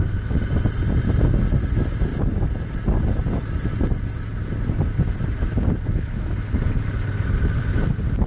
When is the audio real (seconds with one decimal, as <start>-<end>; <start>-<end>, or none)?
0.0-8.3